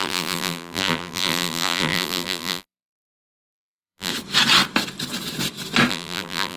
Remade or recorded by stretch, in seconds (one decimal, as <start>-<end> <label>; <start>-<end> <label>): 0.0-4.1 remade; 4.1-5.9 recorded; 5.9-6.6 remade